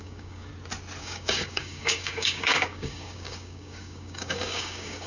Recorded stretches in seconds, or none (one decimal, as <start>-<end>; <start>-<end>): 0.5-1.0